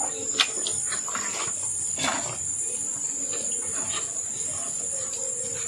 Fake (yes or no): no